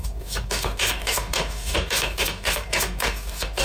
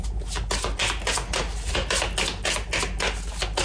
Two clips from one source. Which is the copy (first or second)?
first